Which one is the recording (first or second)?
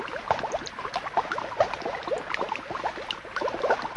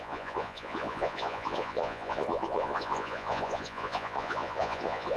first